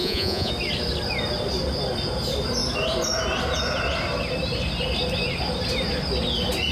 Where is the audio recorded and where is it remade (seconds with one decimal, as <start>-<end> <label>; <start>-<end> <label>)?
0.0-0.5 remade; 0.5-6.7 recorded